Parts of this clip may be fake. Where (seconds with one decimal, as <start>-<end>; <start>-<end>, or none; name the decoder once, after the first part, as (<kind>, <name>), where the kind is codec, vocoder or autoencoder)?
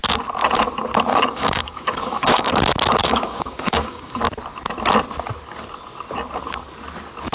1.1-2.5 (codec, DAC); 3.0-4.2